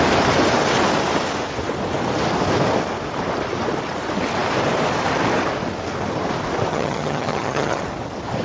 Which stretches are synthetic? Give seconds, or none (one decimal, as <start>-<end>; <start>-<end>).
6.7-7.8